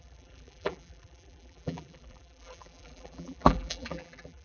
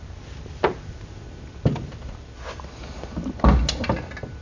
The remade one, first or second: first